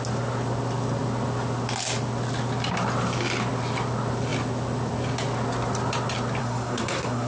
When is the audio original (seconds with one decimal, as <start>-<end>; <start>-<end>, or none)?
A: 0.0-6.4